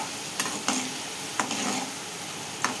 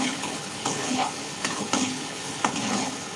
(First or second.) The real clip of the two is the first